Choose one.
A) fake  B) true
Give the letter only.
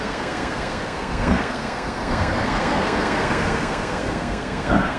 A